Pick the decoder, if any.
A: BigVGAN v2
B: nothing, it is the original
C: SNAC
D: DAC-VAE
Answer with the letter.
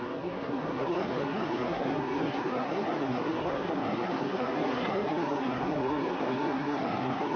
C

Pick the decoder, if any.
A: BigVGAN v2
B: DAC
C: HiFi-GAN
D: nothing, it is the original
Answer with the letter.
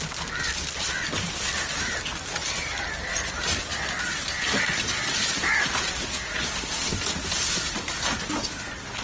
D